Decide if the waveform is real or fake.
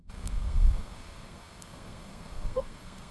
fake